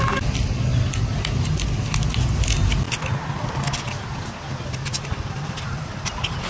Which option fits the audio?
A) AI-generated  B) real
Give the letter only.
B